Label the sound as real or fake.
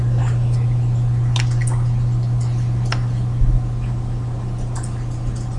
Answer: real